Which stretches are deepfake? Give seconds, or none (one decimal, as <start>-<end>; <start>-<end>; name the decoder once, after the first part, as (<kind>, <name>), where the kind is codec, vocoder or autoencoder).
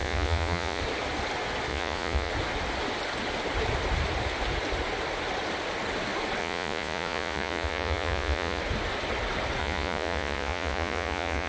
0.0-0.8 (vocoder, Vocos); 1.7-2.3; 6.4-8.6; 9.6-11.5